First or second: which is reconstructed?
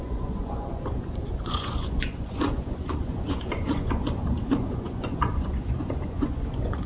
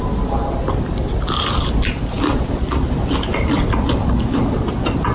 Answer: first